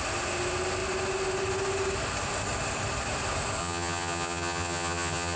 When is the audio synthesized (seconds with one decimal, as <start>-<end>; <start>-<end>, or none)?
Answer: 3.6-5.4